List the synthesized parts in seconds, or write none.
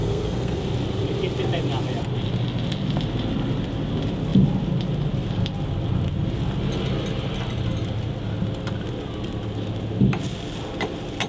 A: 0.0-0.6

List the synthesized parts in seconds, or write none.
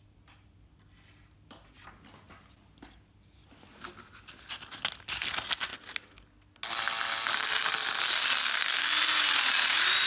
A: none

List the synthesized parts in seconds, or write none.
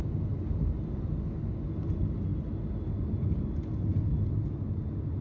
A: none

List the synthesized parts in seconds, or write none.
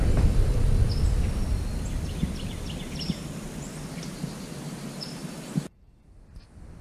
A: none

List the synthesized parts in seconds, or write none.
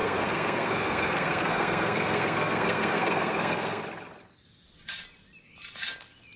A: 0.0-3.8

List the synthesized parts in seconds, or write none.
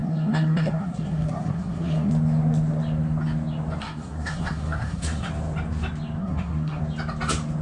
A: 0.0-2.1; 3.8-5.3; 6.2-6.8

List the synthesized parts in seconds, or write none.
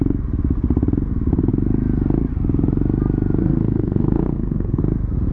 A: 3.4-4.8